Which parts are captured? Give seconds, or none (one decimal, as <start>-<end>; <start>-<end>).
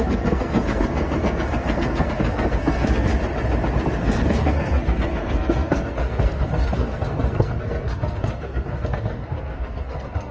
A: 3.1-4.0